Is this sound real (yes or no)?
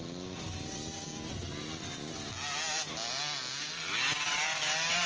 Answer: yes